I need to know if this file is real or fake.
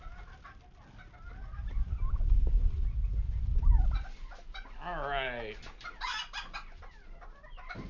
real